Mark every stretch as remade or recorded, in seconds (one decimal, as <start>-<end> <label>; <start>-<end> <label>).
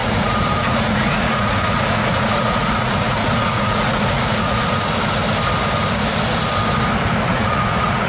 0.0-4.8 remade; 4.8-7.3 recorded; 7.3-8.1 remade